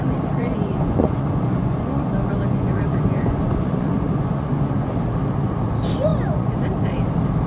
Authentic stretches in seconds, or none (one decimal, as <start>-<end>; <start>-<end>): 0.0-0.4; 4.9-6.1; 6.6-7.5